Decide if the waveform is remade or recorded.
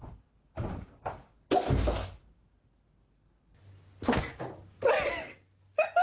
recorded